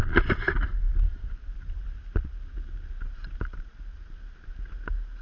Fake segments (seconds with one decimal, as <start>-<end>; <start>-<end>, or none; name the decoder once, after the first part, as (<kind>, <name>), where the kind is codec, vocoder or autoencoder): 0.7-3.8 (vocoder, BigVGAN v2)